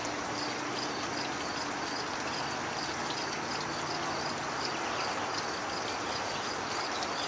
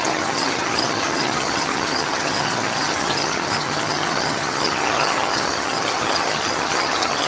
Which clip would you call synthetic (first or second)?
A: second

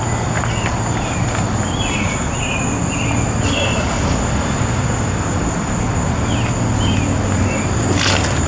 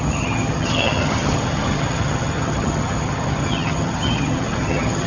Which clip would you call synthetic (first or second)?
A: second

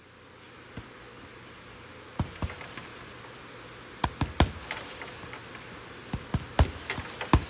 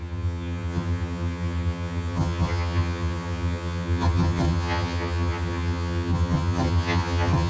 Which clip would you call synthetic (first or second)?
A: second